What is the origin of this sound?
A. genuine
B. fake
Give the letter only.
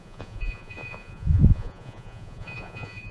B